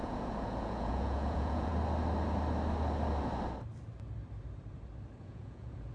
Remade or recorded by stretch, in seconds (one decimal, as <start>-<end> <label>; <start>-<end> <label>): 0.0-1.7 remade; 1.7-5.2 recorded; 5.2-5.9 remade